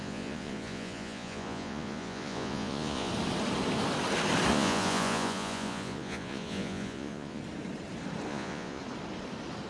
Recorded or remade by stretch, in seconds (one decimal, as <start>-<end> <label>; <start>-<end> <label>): 0.0-3.1 remade; 3.1-4.5 recorded; 4.5-7.4 remade; 7.4-8.3 recorded; 8.3-8.8 remade; 8.8-9.7 recorded